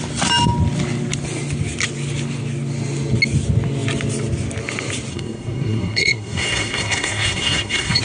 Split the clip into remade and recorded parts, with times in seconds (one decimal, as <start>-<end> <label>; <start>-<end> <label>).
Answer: 0.0-5.1 recorded; 5.1-8.0 remade